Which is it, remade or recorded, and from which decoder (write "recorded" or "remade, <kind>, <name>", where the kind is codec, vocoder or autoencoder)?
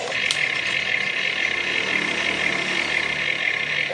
recorded